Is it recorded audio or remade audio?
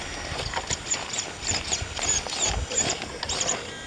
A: remade